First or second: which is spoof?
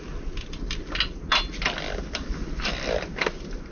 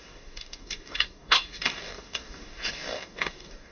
second